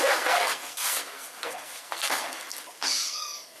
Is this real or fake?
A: fake